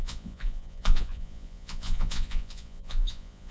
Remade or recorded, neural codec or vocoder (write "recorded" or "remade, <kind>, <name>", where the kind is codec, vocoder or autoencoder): remade, vocoder, Vocos